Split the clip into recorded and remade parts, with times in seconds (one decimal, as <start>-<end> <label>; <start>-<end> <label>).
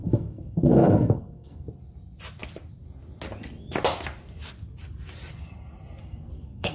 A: 0.0-1.6 remade; 1.6-6.0 recorded; 6.0-6.7 remade